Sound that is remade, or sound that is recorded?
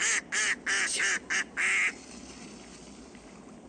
recorded